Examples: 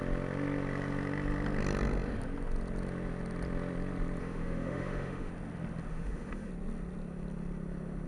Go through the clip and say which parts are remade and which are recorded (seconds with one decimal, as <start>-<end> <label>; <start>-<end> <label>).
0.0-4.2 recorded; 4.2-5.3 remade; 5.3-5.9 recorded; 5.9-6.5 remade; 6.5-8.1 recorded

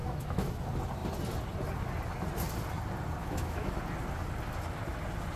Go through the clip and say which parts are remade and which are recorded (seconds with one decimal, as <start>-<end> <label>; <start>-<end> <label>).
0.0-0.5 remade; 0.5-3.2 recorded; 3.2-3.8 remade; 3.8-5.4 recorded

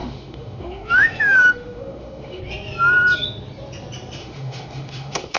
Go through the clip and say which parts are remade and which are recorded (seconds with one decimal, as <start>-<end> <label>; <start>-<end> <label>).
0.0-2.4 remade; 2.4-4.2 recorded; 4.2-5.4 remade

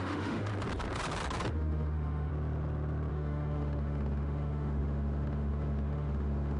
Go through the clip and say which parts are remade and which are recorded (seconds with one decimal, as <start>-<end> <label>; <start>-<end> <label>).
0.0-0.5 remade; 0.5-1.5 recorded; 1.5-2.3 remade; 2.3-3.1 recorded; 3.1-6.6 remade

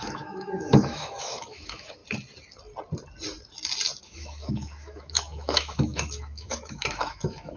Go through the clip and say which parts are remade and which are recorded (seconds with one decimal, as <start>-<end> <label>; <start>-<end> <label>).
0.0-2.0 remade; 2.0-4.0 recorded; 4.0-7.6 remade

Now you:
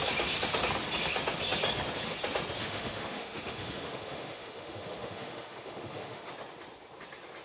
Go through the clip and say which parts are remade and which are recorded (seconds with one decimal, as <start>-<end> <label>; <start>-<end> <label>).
0.0-2.6 recorded; 2.6-6.3 remade; 6.3-7.4 recorded

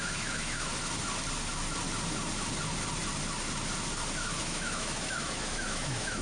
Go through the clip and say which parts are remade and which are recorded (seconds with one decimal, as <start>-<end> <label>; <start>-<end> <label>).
0.0-0.7 remade; 0.7-4.4 recorded; 4.4-6.2 remade